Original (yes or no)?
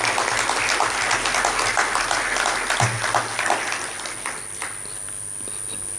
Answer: yes